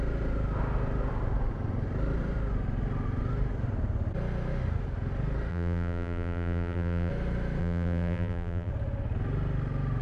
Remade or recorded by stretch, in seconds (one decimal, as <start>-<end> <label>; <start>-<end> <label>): 0.0-5.5 recorded; 5.5-7.1 remade; 7.1-7.6 recorded; 7.6-8.7 remade; 8.7-10.0 recorded